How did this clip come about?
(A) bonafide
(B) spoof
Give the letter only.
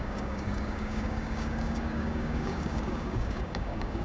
B